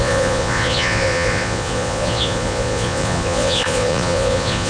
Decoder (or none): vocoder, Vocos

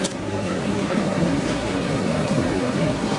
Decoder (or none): codec, SNAC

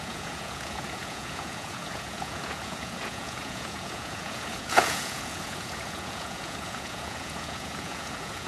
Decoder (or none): vocoder, Vocos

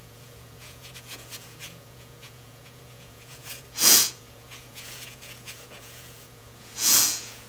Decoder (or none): vocoder, Vocos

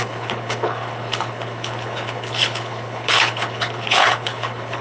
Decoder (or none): codec, HILCodec